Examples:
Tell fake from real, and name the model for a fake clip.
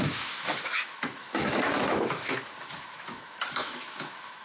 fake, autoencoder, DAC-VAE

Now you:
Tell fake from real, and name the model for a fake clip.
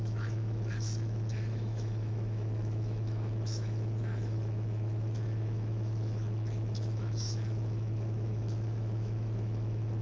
fake, autoencoder, DAC-VAE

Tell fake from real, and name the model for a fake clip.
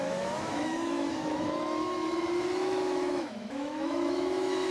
fake, autoencoder, DAC-VAE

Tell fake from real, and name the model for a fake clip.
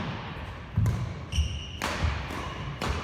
real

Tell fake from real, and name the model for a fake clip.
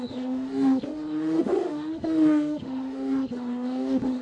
fake, autoencoder, DAC-VAE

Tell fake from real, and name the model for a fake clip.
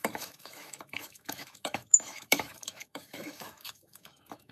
fake, autoencoder, DAC-VAE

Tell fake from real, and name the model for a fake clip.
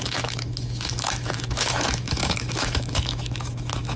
fake, autoencoder, DAC-VAE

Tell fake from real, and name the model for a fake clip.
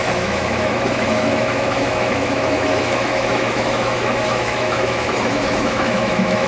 fake, autoencoder, DAC-VAE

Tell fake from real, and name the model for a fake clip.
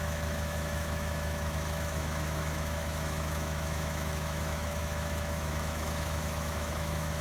fake, autoencoder, DAC-VAE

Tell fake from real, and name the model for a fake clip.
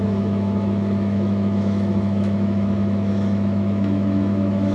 fake, autoencoder, DAC-VAE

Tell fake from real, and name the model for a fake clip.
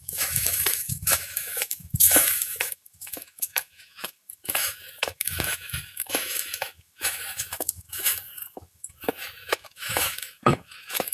fake, autoencoder, DAC-VAE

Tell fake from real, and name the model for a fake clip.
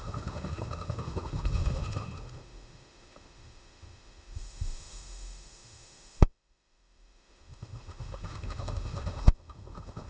fake, autoencoder, DAC-VAE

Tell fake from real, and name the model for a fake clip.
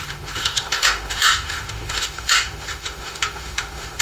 fake, autoencoder, DAC-VAE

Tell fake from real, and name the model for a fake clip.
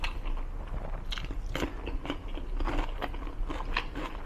real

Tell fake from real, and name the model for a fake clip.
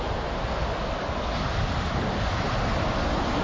real